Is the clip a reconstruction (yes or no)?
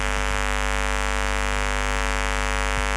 no